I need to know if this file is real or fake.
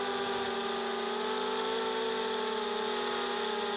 real